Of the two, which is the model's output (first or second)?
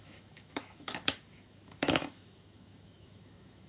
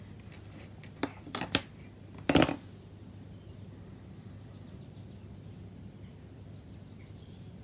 first